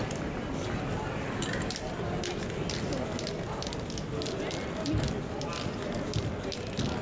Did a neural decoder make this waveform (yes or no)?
no